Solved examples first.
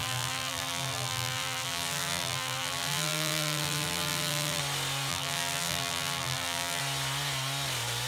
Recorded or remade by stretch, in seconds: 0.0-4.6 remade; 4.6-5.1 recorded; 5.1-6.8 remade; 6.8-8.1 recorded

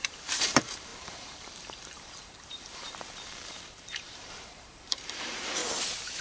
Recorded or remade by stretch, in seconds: 0.0-5.6 remade; 5.6-6.2 recorded

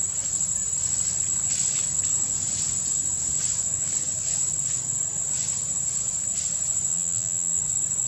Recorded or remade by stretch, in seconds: 0.0-6.9 recorded; 6.9-7.6 remade; 7.6-8.1 recorded

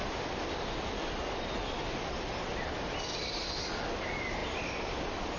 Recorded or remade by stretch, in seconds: 0.0-5.4 recorded

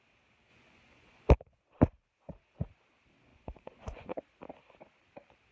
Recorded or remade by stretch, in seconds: 0.0-0.5 recorded; 0.5-1.3 remade; 1.3-3.3 recorded; 3.3-4.2 remade; 4.2-5.5 recorded

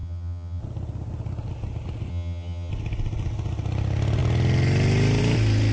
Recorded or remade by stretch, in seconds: 0.0-0.6 remade; 0.6-2.1 recorded; 2.1-2.7 remade; 2.7-5.7 recorded

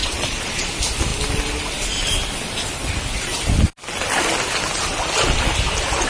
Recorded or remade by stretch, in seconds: 0.0-0.7 remade; 0.7-6.1 recorded

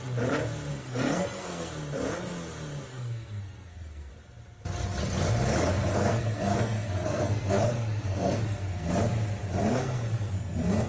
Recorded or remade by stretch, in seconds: 0.0-0.7 recorded; 0.7-1.7 remade; 1.7-2.9 recorded; 2.9-4.1 remade; 4.1-5.9 recorded; 5.9-8.9 remade; 8.9-9.7 recorded; 9.7-10.9 remade